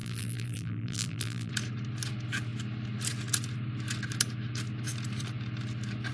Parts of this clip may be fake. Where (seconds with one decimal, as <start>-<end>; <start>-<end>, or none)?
0.0-1.5